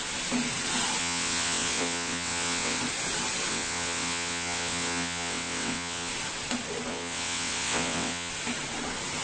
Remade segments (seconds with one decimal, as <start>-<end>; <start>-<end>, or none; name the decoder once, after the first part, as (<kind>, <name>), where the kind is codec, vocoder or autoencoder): 1.0-2.8 (vocoder, WaveNeXt); 3.5-6.1; 6.9-8.3